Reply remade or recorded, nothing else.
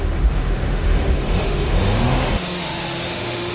remade